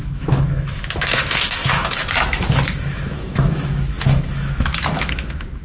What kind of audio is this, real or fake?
fake